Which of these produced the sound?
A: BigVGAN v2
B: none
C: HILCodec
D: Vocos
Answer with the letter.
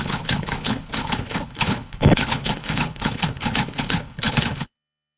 C